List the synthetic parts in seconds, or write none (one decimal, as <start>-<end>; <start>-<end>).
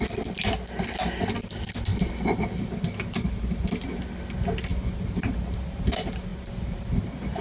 6.3-7.4